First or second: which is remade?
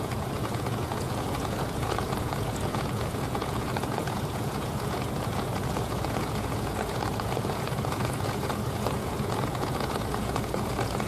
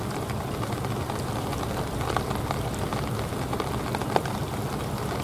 first